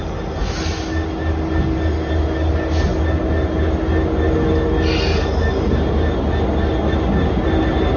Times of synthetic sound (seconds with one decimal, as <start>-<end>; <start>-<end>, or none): none